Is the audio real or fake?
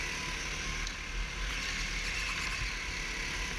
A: real